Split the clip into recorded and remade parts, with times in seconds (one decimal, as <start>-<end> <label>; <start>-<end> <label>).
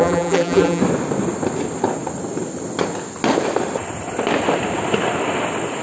0.0-0.8 remade; 0.8-5.8 recorded